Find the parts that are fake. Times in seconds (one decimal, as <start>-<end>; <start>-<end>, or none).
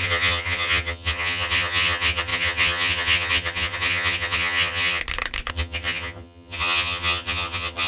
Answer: 0.0-5.0; 5.5-7.9